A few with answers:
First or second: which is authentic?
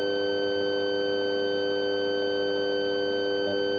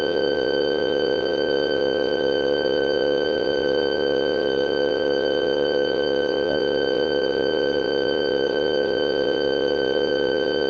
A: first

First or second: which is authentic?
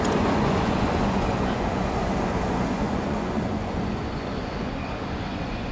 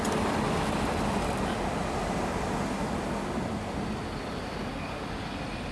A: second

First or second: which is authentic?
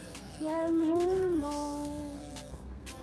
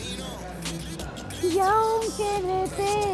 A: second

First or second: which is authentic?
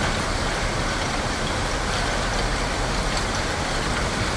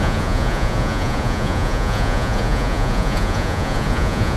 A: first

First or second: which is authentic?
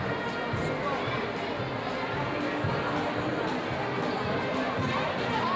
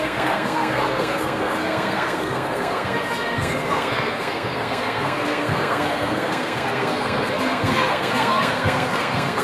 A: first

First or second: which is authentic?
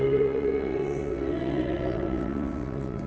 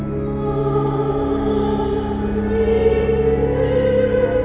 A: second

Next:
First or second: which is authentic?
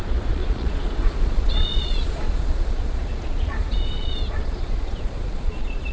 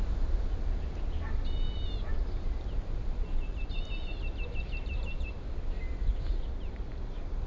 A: second